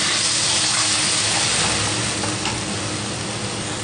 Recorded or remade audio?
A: recorded